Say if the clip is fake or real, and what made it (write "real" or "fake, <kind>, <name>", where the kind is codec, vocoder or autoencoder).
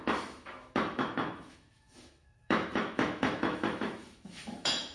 fake, autoencoder, DAC-VAE